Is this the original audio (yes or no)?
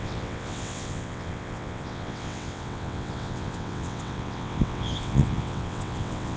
no